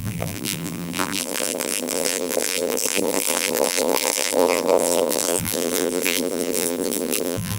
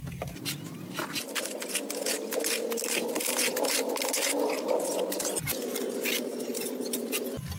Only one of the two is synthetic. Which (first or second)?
first